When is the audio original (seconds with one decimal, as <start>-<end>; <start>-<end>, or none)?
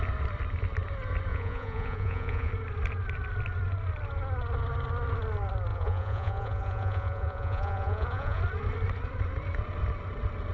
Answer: 0.0-1.3; 2.5-5.7; 8.4-10.5